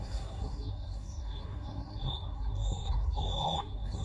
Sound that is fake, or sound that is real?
fake